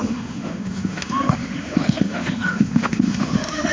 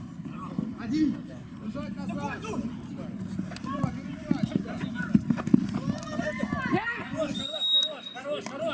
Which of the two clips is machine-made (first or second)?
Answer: first